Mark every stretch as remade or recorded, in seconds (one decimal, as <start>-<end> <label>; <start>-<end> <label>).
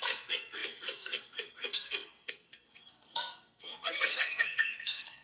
0.0-5.2 remade